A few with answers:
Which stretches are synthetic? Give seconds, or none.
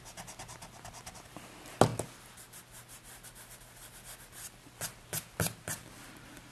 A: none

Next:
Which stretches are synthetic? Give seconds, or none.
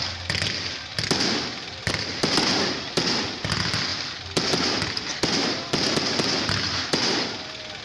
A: 0.9-1.9 (vocoder, BigVGAN v2)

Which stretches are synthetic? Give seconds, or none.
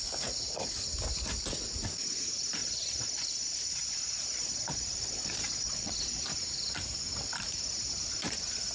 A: 2.6-6.2 (vocoder, Vocos)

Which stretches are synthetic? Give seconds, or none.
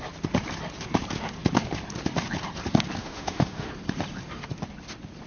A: 3.0-3.7 (autoencoder, DAC-VAE)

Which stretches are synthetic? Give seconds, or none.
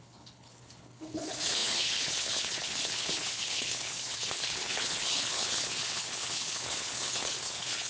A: 0.0-7.9 (codec, HILCodec)